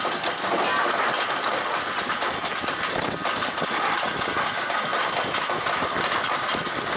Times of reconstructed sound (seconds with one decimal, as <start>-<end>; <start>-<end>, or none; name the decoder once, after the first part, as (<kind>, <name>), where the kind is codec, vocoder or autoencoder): none